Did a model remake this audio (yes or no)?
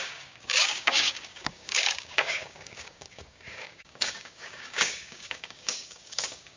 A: yes